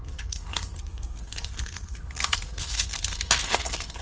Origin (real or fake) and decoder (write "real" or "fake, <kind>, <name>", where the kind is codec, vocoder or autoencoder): fake, codec, SNAC